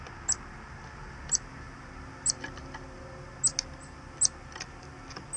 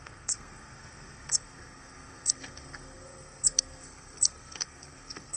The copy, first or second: second